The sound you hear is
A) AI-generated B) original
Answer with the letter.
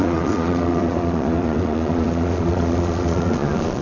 A